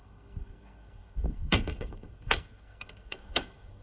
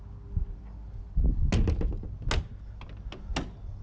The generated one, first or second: first